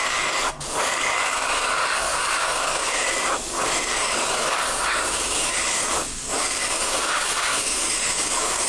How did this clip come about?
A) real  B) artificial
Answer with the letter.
B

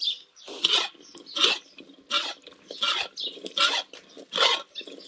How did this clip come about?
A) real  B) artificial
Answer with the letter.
A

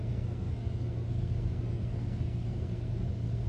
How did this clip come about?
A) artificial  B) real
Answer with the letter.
A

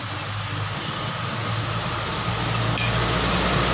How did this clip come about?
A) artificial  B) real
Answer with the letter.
B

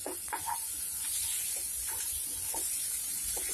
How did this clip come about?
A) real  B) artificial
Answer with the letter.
B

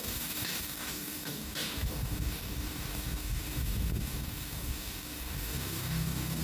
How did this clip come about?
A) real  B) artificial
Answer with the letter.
B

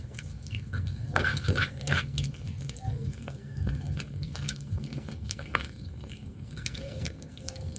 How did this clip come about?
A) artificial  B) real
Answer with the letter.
A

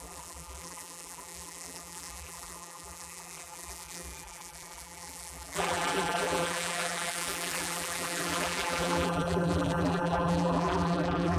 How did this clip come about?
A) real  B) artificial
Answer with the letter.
B